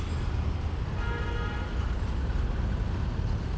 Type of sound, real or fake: real